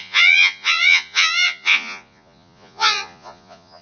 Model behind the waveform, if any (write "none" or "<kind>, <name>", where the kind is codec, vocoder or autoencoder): vocoder, Vocos